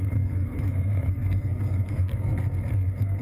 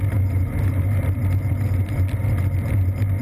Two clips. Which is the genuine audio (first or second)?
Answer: second